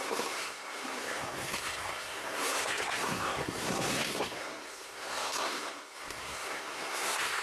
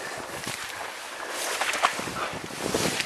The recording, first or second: second